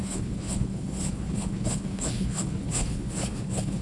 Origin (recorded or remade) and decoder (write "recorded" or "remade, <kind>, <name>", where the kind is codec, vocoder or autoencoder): remade, codec, HILCodec